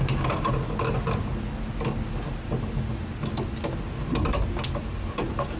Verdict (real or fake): real